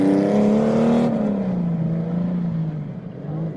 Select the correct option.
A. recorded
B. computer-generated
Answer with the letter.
A